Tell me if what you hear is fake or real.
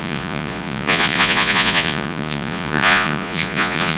fake